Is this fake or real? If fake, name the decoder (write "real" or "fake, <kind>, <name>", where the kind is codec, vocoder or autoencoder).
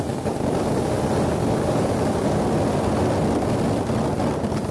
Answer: real